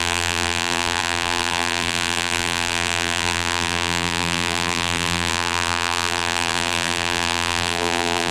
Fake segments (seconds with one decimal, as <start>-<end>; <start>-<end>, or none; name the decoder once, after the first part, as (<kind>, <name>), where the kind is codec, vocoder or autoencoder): 0.0-8.3 (vocoder, BigVGAN v2)